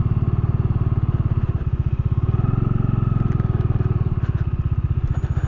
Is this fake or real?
real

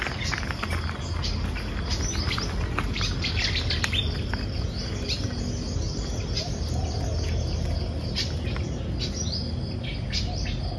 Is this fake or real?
real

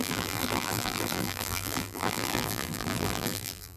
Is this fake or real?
fake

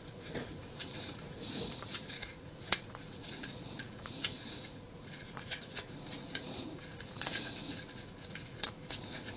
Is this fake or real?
fake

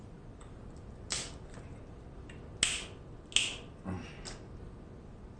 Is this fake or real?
real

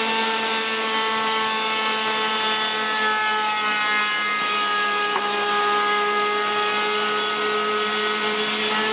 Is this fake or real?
real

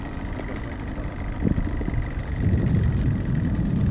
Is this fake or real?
real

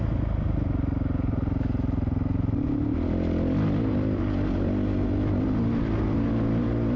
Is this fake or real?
real